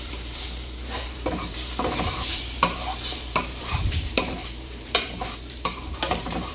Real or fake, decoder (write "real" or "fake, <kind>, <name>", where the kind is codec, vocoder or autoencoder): fake, vocoder, BigVGAN v2